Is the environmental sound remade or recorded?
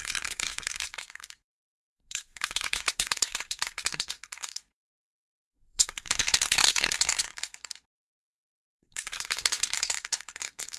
remade